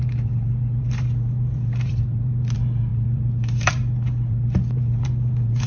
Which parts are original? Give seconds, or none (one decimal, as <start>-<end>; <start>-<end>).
none